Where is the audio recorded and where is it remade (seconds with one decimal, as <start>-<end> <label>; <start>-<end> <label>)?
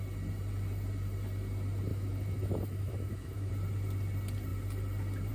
0.0-1.9 recorded; 1.9-3.5 remade; 3.5-5.3 recorded